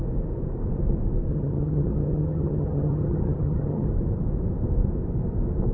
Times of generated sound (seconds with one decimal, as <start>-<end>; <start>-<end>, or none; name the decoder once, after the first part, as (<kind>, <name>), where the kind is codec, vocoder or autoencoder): 1.3-3.9 (vocoder, HiFi-GAN)